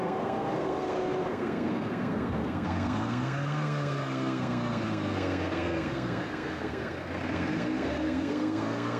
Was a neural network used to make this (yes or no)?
yes